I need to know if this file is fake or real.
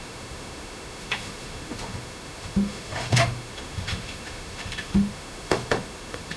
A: fake